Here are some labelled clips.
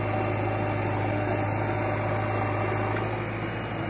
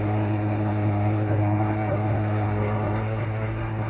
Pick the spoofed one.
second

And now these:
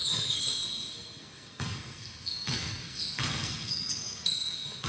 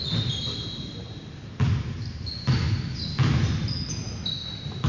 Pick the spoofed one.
first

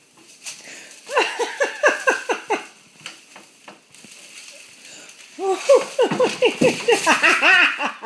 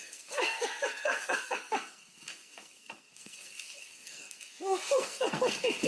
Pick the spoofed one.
second